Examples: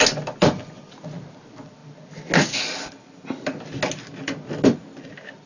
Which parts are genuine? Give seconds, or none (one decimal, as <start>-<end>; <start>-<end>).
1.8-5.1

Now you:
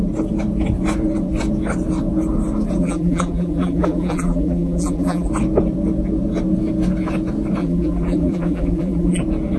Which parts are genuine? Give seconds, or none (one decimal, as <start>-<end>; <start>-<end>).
0.0-2.8; 5.3-7.6; 9.2-9.6

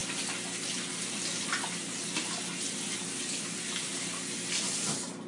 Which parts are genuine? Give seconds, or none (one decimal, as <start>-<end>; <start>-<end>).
0.0-5.3

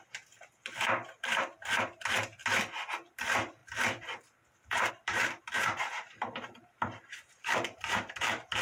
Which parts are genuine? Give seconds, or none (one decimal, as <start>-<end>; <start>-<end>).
2.4-3.1; 3.6-4.9

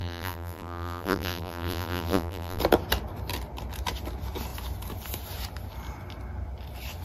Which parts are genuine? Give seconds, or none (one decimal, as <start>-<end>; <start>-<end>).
2.6-7.0

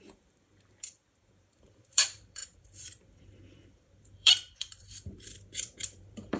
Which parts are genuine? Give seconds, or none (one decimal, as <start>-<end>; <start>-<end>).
none

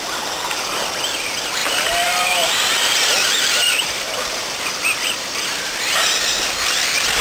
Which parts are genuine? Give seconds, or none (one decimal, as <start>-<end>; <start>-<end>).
0.0-1.6; 5.9-7.2

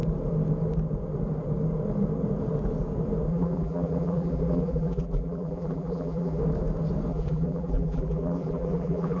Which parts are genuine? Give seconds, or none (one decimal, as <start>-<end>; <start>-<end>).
0.0-3.3; 6.4-7.1